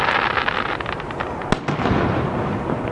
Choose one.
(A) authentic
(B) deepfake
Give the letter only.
A